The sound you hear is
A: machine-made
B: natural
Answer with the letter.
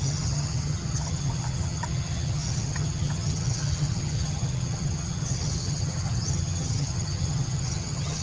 A